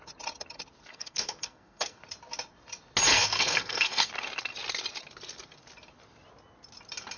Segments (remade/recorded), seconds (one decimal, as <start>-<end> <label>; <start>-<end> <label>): 0.0-0.9 recorded; 0.9-2.0 remade; 2.0-3.1 recorded; 3.1-4.1 remade; 4.1-7.2 recorded